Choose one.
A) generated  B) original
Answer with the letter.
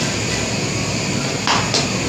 B